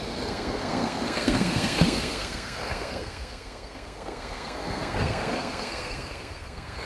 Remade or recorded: remade